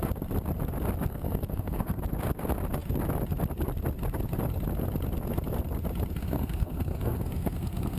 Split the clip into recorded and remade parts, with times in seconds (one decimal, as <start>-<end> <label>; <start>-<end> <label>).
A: 0.0-1.1 recorded; 1.1-2.0 remade; 2.0-6.2 recorded; 6.2-8.0 remade